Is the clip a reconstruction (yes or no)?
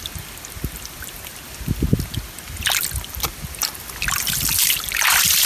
no